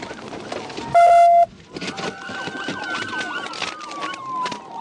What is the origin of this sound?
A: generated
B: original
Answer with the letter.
B